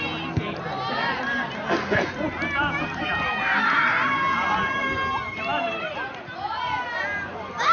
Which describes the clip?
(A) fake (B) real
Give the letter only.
B